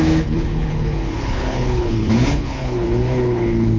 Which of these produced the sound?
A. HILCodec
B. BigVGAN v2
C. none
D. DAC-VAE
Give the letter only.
A